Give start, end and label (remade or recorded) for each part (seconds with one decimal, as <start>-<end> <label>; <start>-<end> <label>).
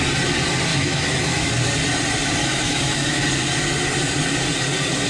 0.0-0.7 recorded; 0.7-1.5 remade; 1.5-2.4 recorded; 2.4-3.2 remade; 3.2-5.1 recorded